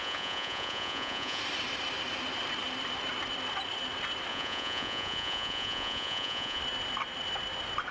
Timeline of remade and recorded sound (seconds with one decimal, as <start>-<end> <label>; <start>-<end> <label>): 0.0-1.4 remade; 1.4-4.3 recorded; 4.3-6.6 remade; 6.6-7.9 recorded